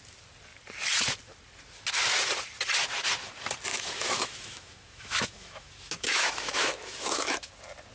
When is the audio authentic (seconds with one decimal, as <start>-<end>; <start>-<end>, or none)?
0.0-3.7; 7.5-7.9